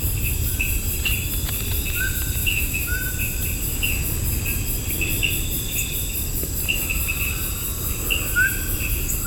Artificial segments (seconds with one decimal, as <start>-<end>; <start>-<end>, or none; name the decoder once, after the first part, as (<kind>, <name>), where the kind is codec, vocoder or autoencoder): 2.4-3.1 (autoencoder, DAC-VAE)